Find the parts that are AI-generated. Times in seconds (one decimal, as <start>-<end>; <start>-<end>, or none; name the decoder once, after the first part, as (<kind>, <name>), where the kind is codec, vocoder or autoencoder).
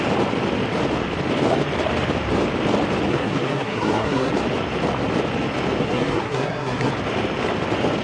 3.1-4.3 (codec, SNAC); 5.8-6.9